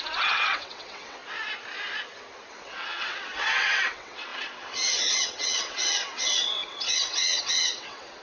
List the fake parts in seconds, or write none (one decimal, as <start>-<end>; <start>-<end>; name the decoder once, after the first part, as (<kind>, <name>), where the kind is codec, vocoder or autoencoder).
0.0-1.2 (vocoder, WaveNeXt); 2.5-8.2